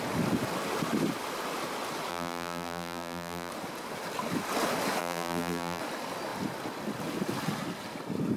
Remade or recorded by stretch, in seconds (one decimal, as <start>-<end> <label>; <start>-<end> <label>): 0.0-2.1 recorded; 2.1-3.5 remade; 3.5-5.0 recorded; 5.0-5.8 remade; 5.8-8.4 recorded